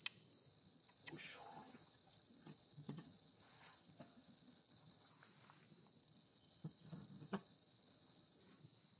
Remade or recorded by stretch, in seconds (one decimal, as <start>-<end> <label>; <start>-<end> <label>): 0.0-0.5 recorded; 0.5-5.1 remade; 5.1-6.0 recorded; 6.0-8.4 remade; 8.4-9.0 recorded